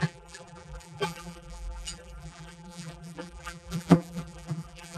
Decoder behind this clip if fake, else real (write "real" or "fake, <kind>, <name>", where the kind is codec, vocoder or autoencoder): fake, vocoder, BigVGAN v2